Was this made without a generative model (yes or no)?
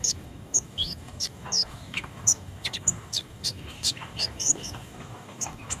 no